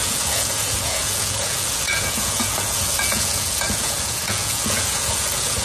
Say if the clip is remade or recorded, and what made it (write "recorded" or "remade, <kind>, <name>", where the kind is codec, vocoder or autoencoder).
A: remade, vocoder, Vocos